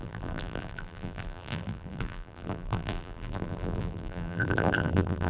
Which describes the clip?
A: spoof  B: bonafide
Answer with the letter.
A